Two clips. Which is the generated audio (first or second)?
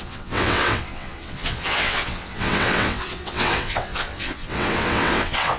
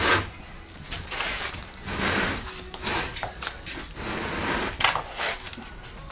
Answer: first